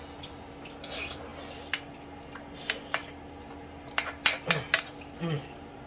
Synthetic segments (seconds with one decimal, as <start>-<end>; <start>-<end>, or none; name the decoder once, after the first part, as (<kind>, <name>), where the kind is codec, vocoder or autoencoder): 0.0-1.3 (vocoder, BigVGAN v2); 4.8-5.9

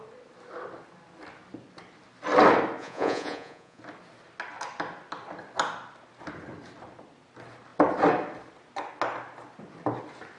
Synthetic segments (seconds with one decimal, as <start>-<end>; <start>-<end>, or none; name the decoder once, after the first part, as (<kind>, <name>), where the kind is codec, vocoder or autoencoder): 2.8-3.8 (vocoder, Vocos)

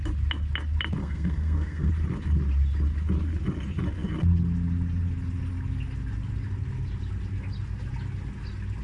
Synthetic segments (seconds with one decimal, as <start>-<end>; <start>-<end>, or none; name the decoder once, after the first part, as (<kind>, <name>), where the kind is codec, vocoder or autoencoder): 1.0-1.9 (codec, SNAC)

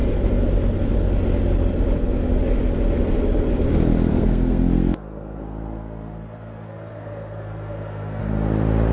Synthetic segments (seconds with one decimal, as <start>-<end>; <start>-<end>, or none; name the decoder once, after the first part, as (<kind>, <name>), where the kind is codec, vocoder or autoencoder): 4.1-8.2 (codec, SNAC)

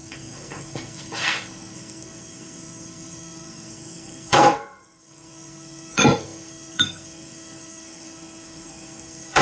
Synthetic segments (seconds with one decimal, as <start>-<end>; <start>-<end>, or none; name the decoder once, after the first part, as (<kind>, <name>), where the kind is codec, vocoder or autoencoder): 0.0-9.4 (codec, SNAC)

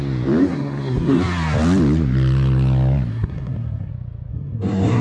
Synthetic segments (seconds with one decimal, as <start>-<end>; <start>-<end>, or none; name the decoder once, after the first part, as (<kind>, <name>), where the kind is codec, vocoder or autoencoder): 0.4-1.2 (codec, SNAC); 3.1-3.9; 4.3-5.0

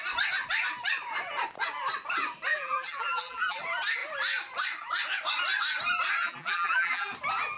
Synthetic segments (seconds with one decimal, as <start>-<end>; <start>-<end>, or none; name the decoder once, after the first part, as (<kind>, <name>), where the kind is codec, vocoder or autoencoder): 2.5-3.6 (vocoder, BigVGAN v2); 6.2-7.1